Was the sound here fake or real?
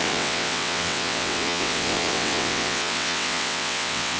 fake